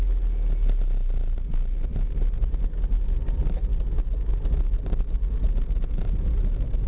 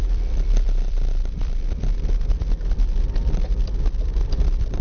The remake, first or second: second